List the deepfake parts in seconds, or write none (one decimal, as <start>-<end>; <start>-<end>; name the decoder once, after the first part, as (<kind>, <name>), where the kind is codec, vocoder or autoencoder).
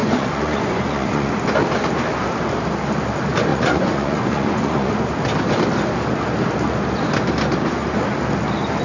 0.0-1.3 (vocoder, Vocos); 3.5-4.9